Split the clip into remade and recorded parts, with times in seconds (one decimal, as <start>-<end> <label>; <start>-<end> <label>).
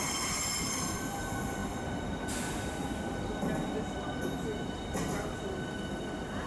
0.0-6.5 recorded